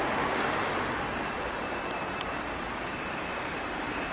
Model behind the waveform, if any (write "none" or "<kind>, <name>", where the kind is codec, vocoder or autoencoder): vocoder, BigVGAN v2